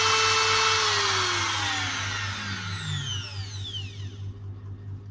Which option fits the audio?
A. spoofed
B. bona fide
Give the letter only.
B